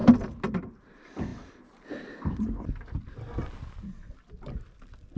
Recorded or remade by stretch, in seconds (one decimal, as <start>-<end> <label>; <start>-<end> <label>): 0.0-5.2 recorded